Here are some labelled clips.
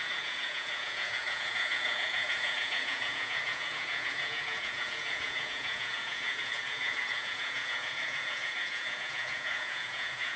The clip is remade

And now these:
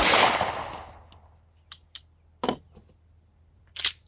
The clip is recorded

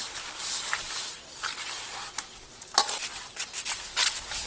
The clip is recorded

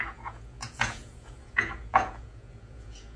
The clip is remade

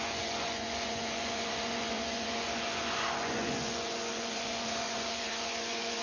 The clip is remade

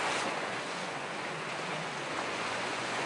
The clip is remade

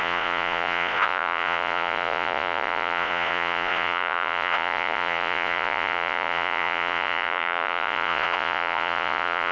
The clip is remade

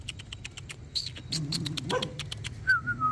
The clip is recorded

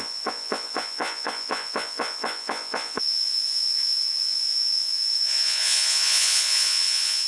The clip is remade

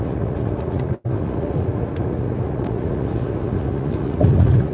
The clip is remade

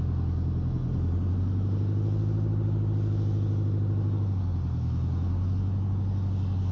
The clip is recorded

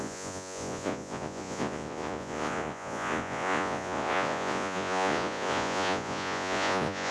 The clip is remade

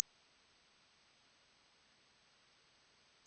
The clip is recorded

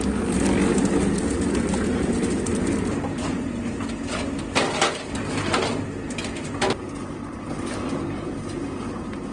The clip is recorded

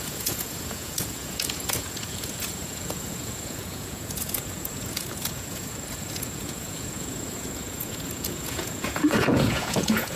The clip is remade